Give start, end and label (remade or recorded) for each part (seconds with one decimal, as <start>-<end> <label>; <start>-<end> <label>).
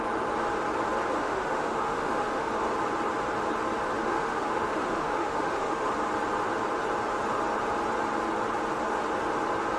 0.0-1.1 recorded; 1.1-2.5 remade; 2.5-4.1 recorded; 4.1-5.9 remade; 5.9-9.8 recorded